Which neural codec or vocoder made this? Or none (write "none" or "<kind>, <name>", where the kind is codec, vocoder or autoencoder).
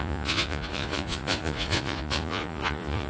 vocoder, Vocos